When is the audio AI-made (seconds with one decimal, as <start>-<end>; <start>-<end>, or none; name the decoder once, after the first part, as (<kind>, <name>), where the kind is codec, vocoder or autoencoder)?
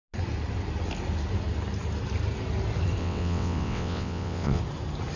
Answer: 3.0-4.6 (vocoder, WaveNeXt)